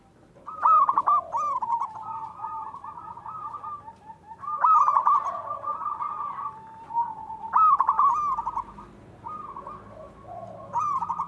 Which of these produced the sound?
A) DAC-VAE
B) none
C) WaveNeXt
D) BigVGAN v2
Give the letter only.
B